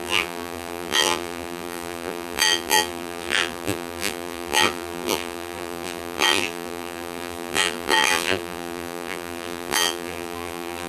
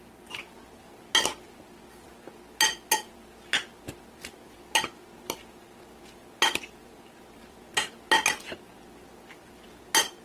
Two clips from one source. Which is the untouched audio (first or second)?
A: second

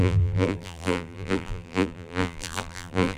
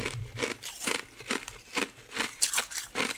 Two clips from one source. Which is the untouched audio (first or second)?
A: second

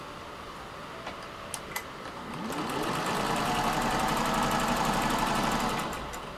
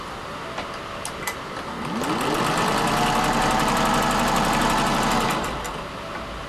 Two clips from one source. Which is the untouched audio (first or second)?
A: second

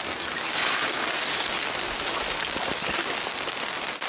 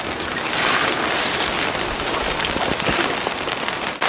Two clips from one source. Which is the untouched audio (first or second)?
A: first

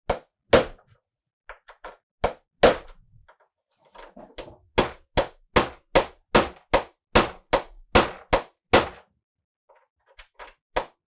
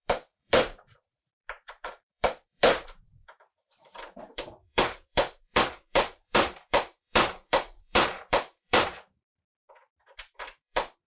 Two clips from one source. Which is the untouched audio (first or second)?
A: first